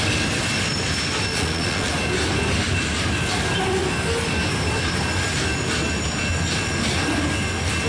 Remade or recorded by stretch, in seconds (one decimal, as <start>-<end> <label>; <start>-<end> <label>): 0.0-1.3 recorded; 1.3-1.9 remade; 1.9-7.9 recorded